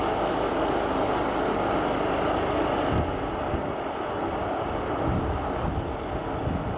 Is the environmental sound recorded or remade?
recorded